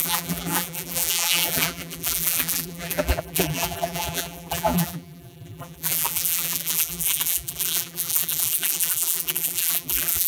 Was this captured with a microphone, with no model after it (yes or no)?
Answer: no